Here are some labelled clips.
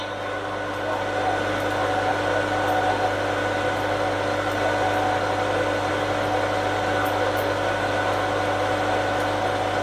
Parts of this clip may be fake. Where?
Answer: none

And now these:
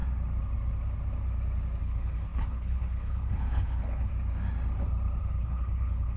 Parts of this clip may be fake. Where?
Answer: 1.8-4.1 (codec, HILCodec); 5.2-6.2

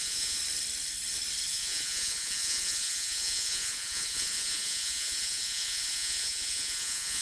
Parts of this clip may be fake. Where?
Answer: 0.0-0.4 (vocoder, Vocos); 1.5-7.2

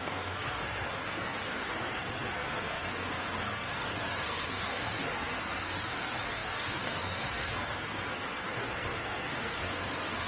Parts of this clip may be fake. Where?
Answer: 0.0-10.3 (codec, SNAC)